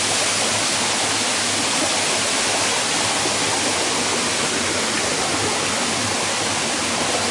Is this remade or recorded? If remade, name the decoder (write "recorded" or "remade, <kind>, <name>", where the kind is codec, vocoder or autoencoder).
recorded